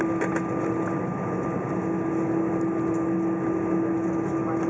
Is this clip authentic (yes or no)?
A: yes